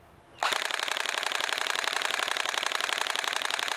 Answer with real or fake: real